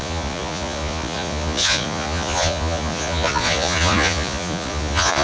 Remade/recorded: remade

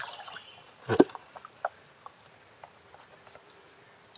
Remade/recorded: recorded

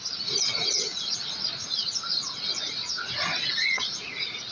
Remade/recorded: remade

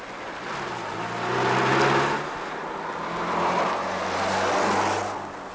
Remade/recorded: recorded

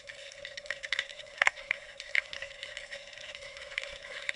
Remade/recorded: remade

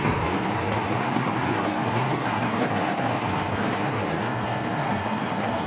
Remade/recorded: remade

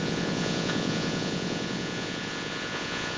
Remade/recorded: remade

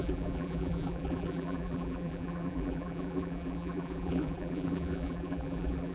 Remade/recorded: remade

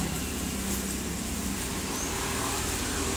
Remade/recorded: recorded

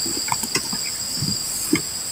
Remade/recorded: recorded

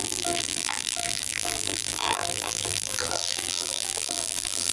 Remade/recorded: remade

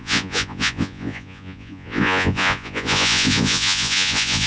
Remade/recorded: remade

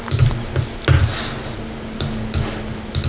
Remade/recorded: recorded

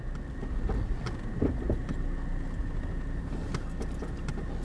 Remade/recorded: recorded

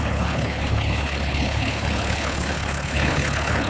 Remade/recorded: remade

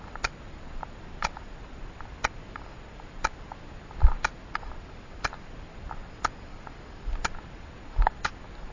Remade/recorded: recorded